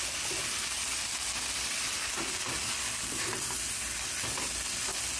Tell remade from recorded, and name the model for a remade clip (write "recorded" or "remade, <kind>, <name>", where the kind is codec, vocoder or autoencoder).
recorded